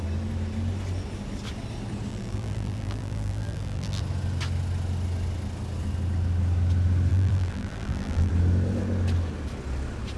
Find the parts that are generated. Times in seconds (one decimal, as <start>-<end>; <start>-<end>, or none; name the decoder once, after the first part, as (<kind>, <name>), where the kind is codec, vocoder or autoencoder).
2.1-4.0 (vocoder, BigVGAN v2); 7.1-8.3